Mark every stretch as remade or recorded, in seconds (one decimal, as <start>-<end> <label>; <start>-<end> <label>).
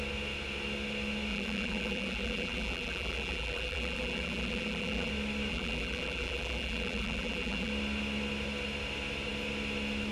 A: 0.0-1.3 recorded; 1.3-5.1 remade; 5.1-5.5 recorded; 5.5-7.7 remade; 7.7-10.1 recorded